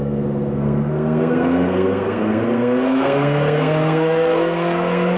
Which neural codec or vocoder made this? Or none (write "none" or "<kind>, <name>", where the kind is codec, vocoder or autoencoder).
codec, SNAC